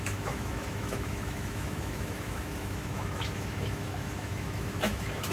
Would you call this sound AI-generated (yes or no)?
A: yes